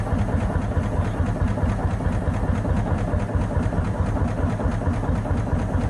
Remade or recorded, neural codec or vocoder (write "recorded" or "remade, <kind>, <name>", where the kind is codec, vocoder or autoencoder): recorded